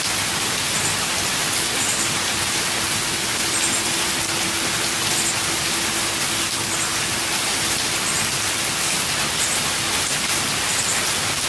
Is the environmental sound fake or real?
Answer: real